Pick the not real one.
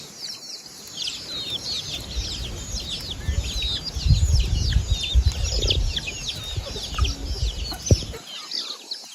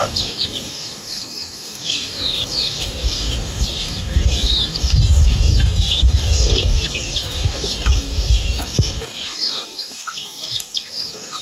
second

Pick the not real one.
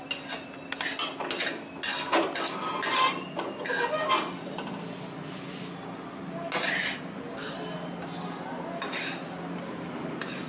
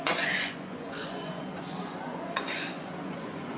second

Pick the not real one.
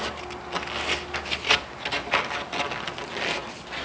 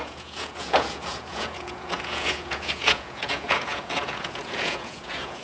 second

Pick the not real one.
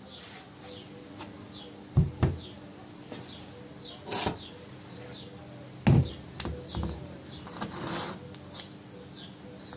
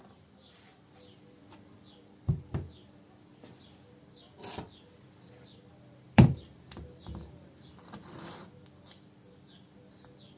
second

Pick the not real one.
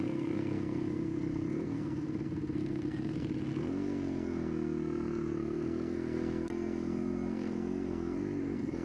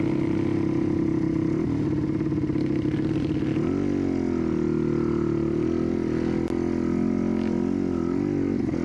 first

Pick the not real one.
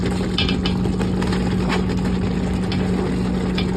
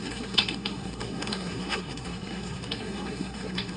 second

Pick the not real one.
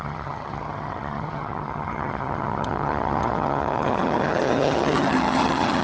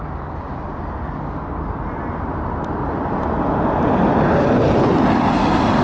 first